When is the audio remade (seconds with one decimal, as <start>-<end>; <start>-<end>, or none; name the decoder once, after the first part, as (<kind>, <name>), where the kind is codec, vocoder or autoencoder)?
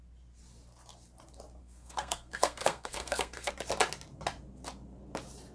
1.6-3.5 (codec, SNAC)